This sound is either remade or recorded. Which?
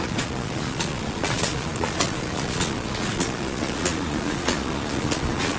remade